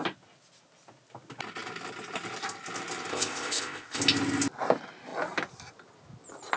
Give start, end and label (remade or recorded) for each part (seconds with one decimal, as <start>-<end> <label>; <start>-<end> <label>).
0.0-3.1 recorded; 3.1-4.0 remade; 4.0-6.6 recorded